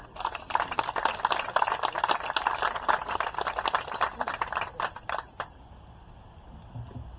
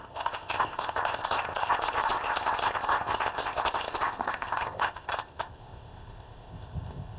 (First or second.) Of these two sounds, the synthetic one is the second